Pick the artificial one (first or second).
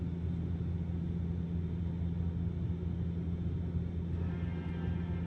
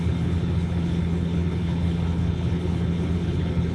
second